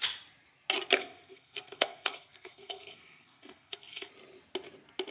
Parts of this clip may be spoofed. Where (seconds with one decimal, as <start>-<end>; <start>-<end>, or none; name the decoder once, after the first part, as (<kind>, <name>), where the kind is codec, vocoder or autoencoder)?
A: 1.0-4.1 (codec, SNAC)